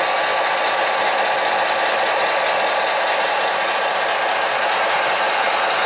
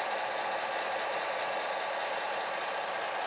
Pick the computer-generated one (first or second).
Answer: second